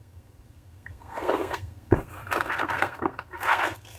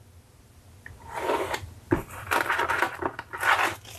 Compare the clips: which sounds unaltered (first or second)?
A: second